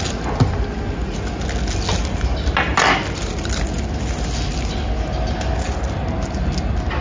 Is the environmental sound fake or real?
real